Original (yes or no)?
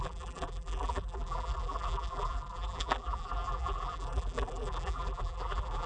no